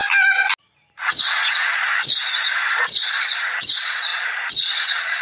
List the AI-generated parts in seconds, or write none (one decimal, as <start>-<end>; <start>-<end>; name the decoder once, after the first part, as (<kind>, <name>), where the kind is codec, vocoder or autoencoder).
1.0-1.9 (vocoder, Vocos); 2.8-5.2